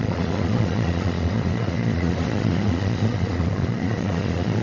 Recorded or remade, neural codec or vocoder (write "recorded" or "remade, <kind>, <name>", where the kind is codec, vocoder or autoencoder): remade, vocoder, Vocos